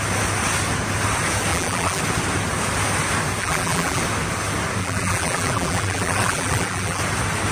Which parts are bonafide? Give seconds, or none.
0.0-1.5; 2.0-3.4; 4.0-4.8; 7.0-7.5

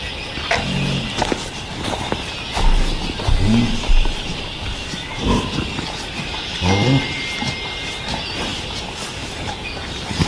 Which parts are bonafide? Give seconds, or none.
0.0-9.2

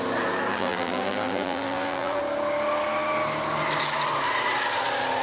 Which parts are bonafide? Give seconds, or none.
0.0-0.5; 2.2-5.2

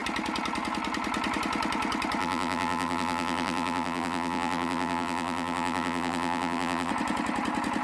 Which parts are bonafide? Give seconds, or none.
0.0-2.2; 6.9-7.8

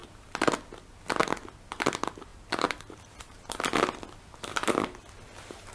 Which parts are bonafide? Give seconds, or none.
0.0-2.3; 3.4-4.5; 5.0-5.7